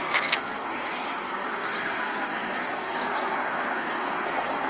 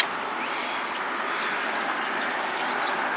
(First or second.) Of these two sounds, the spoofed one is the first